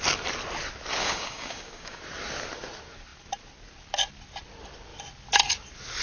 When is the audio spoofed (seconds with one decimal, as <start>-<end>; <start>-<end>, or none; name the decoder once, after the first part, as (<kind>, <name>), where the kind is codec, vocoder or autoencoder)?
1.0-2.0 (codec, DAC)